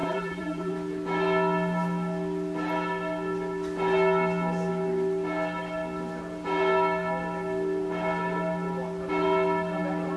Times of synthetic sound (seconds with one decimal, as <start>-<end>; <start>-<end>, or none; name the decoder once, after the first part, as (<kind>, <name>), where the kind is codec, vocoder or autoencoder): 0.0-0.7 (vocoder, BigVGAN v2)

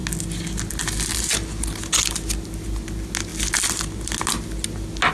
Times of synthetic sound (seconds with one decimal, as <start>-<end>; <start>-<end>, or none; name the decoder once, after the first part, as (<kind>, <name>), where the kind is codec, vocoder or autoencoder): none

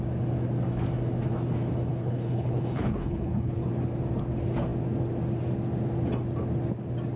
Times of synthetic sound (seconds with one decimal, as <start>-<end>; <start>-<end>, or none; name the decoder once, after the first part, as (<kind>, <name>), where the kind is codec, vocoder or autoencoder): 1.9-3.7 (codec, HILCodec)